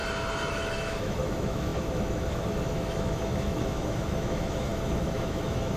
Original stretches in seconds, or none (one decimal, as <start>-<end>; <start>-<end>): 0.0-0.5